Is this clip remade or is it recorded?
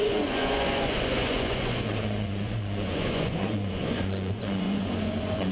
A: remade